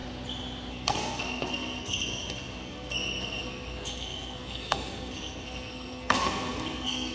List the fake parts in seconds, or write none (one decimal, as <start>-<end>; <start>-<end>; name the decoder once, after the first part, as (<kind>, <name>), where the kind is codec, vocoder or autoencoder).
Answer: 0.7-7.1 (codec, SNAC)